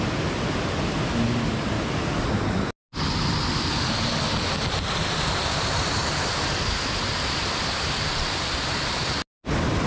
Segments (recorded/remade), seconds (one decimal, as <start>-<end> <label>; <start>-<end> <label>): 0.0-9.9 recorded